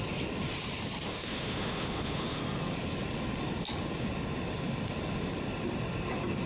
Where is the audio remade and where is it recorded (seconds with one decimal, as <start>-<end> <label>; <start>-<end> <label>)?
0.0-1.1 recorded; 1.1-2.4 remade; 2.4-6.5 recorded